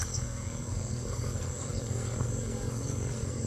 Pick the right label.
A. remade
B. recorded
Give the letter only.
A